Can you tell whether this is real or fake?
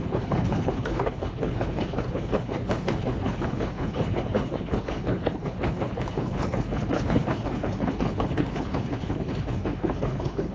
fake